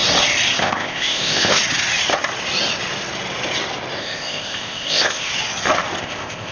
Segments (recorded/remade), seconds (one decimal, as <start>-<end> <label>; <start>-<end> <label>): 0.0-0.6 recorded; 0.6-1.6 remade; 1.6-4.0 recorded; 4.0-5.3 remade; 5.3-6.0 recorded; 6.0-6.5 remade